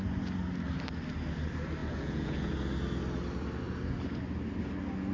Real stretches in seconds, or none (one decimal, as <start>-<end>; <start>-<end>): 0.0-1.8; 2.5-5.1